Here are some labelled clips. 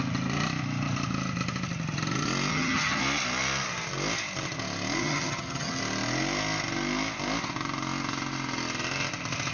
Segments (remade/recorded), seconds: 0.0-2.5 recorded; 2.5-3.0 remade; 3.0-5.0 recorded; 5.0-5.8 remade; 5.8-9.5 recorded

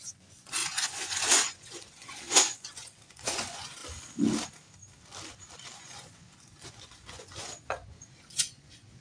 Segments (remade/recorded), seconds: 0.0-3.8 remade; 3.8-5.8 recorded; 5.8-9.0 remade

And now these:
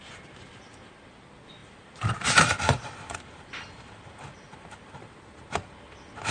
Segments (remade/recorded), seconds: 0.0-1.6 recorded; 1.6-5.4 remade; 5.4-6.3 recorded

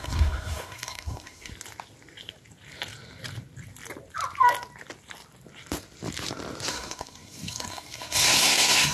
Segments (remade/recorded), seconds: 0.0-1.5 remade; 1.5-6.7 recorded; 6.7-8.9 remade

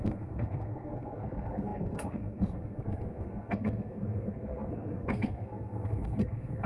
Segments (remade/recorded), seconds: 0.0-6.7 remade

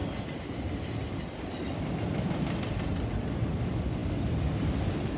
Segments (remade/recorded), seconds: 0.0-5.2 recorded

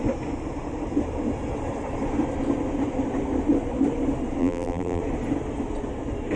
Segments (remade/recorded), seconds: 0.0-4.4 recorded; 4.4-5.0 remade; 5.0-6.4 recorded